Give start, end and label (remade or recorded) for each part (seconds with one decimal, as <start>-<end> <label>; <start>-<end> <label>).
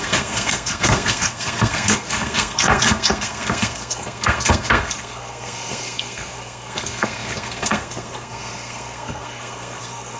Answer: 0.0-10.2 remade